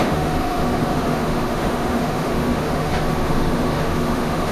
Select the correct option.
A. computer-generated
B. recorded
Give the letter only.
A